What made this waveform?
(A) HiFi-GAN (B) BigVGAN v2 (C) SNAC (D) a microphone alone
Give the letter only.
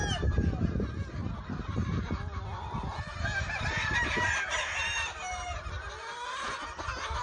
D